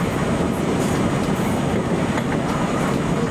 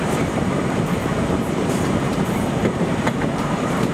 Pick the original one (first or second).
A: first